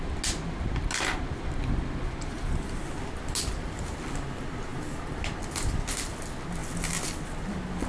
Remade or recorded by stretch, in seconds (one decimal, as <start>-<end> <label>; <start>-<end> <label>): 0.0-7.9 recorded